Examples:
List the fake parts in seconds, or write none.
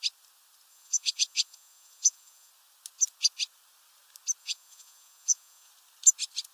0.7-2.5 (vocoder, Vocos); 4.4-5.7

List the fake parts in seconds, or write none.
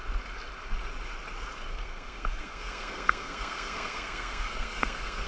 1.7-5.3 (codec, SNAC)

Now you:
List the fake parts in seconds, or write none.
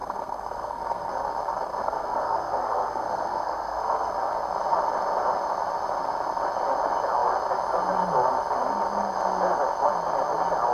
0.0-1.1 (codec, SNAC); 1.8-4.1